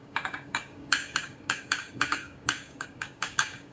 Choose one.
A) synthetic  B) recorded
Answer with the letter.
A